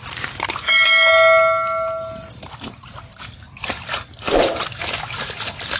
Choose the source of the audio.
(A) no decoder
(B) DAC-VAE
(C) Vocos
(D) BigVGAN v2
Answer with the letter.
A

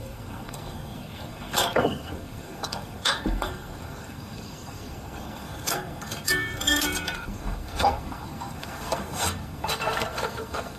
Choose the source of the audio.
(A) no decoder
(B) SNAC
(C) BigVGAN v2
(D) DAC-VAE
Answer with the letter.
B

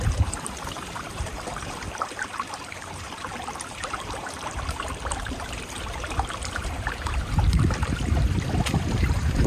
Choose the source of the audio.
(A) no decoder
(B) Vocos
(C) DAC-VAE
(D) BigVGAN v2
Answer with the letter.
D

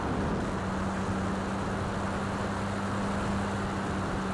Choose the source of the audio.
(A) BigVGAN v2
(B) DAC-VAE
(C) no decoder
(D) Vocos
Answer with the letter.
C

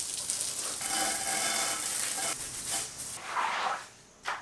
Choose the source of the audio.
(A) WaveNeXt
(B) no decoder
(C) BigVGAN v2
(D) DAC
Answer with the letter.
B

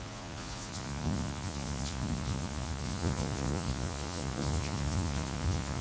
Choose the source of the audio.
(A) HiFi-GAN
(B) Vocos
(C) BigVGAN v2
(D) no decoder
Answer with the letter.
B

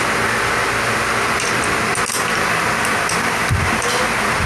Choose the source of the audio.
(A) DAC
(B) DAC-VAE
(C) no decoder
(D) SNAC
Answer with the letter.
C